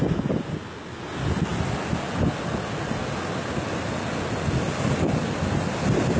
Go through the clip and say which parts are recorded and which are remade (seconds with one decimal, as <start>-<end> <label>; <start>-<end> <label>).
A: 0.0-6.2 recorded